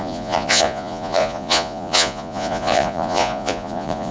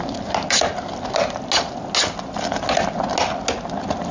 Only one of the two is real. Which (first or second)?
second